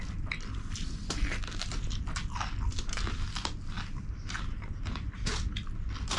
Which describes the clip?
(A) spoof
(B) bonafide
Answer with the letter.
B